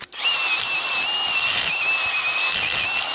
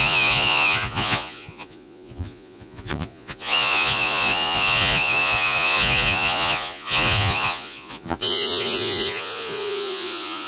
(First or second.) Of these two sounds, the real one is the first